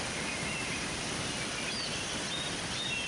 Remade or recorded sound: remade